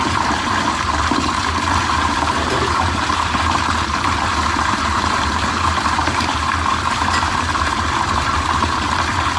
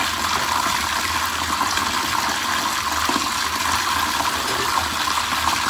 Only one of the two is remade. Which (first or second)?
first